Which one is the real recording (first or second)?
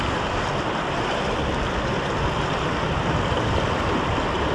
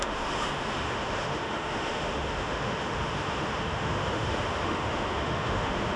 first